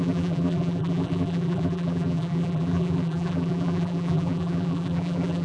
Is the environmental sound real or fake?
fake